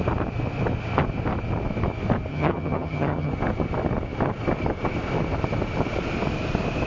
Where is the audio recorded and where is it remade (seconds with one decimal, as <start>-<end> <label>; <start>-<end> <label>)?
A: 0.0-2.3 recorded; 2.3-3.3 remade; 3.3-6.9 recorded